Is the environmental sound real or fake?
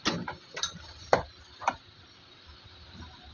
real